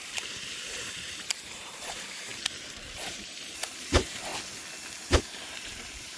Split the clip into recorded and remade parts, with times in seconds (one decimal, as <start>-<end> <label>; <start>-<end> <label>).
0.0-2.3 remade; 2.3-3.0 recorded; 3.0-4.3 remade; 4.3-5.2 recorded; 5.2-6.2 remade

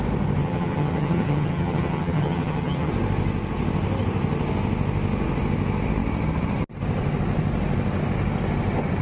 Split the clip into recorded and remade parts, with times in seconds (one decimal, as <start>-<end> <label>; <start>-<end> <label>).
0.0-0.4 recorded; 0.4-2.9 remade; 2.9-9.0 recorded

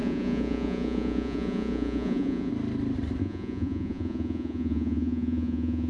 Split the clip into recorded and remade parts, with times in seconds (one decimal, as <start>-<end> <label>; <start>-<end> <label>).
0.0-2.5 remade; 2.5-3.2 recorded; 3.2-5.9 remade

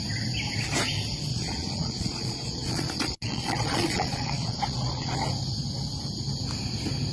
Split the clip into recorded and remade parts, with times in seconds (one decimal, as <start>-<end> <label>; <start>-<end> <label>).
0.0-1.3 recorded; 1.3-5.3 remade; 5.3-7.1 recorded

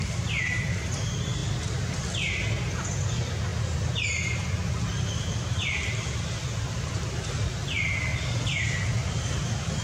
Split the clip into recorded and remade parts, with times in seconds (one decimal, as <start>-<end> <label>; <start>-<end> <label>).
0.0-3.5 recorded; 3.5-7.3 remade; 7.3-8.1 recorded; 8.1-8.7 remade; 8.7-9.8 recorded

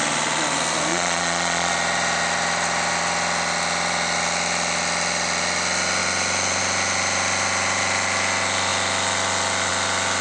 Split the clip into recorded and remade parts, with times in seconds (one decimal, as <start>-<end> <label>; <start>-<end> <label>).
0.0-0.9 recorded; 0.9-1.7 remade; 1.7-10.2 recorded